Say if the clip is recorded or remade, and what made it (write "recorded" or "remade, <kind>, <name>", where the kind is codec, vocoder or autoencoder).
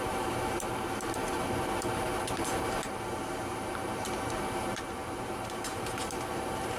remade, vocoder, BigVGAN v2